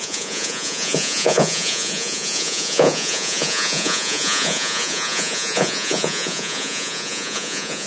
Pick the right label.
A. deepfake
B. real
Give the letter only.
A